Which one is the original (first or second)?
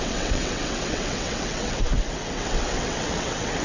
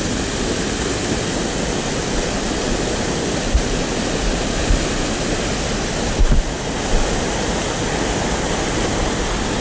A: second